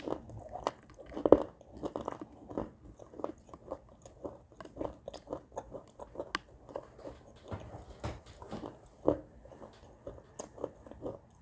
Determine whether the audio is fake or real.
real